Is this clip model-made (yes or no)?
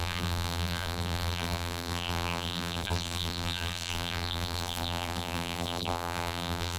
yes